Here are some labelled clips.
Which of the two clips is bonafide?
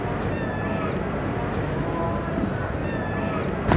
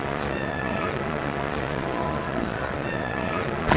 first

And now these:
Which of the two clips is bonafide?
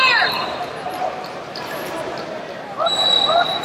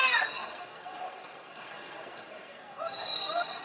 first